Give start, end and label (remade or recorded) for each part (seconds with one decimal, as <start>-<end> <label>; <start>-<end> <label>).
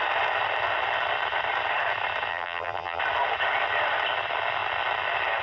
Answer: 0.0-2.3 recorded; 2.3-3.0 remade; 3.0-5.4 recorded